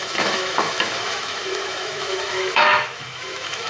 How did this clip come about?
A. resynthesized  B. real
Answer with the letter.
A